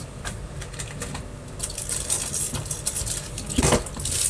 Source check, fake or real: real